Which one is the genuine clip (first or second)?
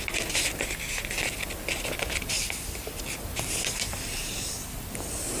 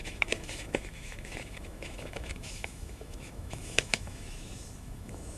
first